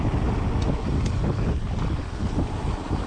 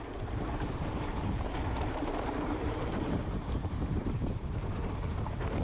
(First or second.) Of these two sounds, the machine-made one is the second